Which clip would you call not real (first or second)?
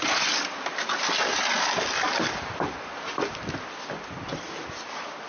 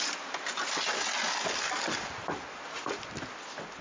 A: first